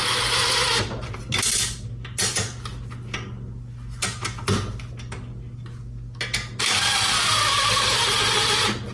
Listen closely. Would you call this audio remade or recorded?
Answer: recorded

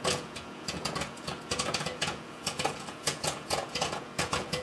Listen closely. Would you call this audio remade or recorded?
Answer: remade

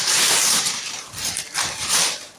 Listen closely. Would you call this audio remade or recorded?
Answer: remade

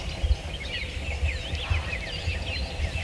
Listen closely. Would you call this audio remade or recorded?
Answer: recorded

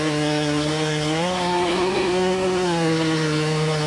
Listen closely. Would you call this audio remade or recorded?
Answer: remade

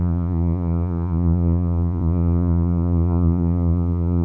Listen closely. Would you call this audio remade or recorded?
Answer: remade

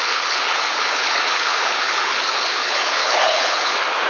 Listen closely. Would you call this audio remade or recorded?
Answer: remade